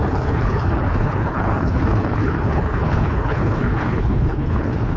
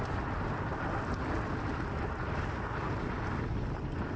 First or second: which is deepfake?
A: first